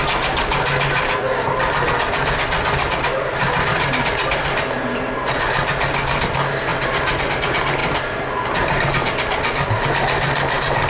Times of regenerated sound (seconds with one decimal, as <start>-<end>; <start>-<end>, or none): none